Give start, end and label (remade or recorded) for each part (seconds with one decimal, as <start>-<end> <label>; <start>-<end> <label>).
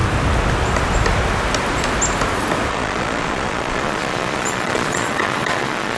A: 0.0-2.7 recorded; 2.7-6.0 remade